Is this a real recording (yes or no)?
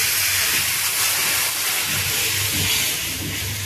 yes